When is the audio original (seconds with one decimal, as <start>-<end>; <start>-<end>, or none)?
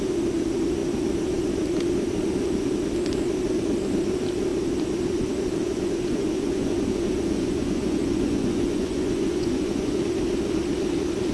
0.0-5.6; 10.0-11.3